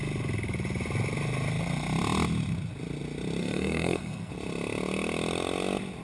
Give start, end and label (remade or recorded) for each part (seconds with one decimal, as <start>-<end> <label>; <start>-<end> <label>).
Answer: 0.0-3.4 recorded; 3.4-4.3 remade; 4.3-6.0 recorded